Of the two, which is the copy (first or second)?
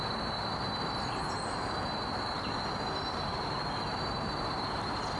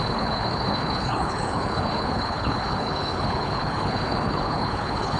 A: second